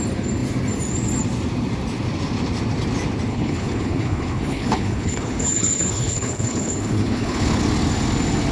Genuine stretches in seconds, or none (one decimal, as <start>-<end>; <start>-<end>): 0.0-3.3; 7.6-8.5